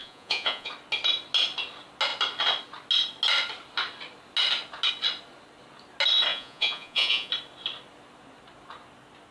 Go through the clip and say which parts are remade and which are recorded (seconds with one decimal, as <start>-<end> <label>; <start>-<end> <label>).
0.0-0.7 remade; 0.7-6.3 recorded; 6.3-7.3 remade; 7.3-9.3 recorded